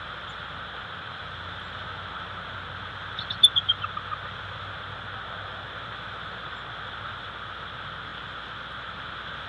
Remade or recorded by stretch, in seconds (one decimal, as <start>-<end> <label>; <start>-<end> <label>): 0.0-9.5 recorded